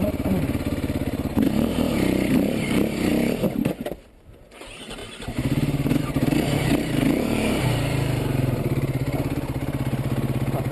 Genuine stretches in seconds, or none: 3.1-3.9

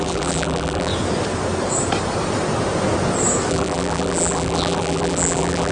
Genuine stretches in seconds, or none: 0.9-3.5

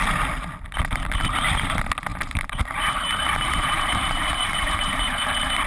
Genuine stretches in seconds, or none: 0.0-2.1; 5.2-5.7